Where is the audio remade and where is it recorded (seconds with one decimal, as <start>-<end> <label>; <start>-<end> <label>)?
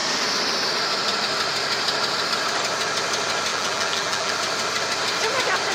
0.0-3.5 recorded; 3.5-4.3 remade; 4.3-5.7 recorded